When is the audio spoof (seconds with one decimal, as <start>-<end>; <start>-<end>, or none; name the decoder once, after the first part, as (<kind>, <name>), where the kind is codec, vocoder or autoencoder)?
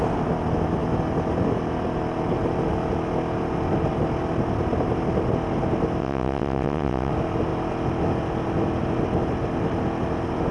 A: 6.0-7.1 (vocoder, WaveNeXt)